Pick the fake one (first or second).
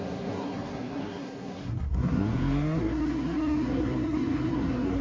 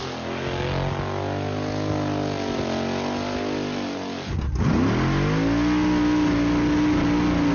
first